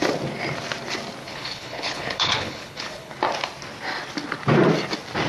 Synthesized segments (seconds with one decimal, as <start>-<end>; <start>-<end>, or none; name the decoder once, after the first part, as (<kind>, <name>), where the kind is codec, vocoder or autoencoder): 1.2-3.1 (codec, HILCodec)